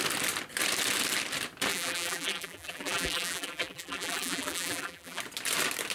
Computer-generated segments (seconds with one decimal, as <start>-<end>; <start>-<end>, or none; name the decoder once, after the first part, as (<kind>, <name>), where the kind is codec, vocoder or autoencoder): 1.7-5.2 (vocoder, BigVGAN v2)